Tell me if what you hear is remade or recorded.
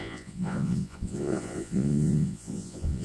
remade